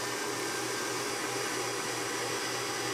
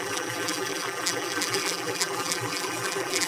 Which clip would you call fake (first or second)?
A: second